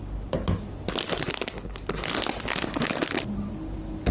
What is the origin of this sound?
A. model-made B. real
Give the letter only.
B